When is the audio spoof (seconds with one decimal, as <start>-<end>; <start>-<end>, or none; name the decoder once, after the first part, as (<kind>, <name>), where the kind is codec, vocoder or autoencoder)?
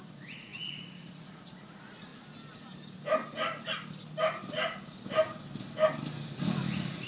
0.0-2.1 (vocoder, Vocos); 6.4-7.1